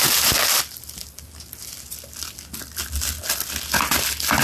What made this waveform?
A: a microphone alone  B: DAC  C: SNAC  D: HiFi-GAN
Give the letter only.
A